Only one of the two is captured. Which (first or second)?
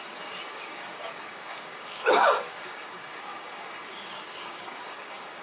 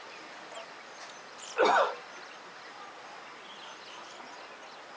second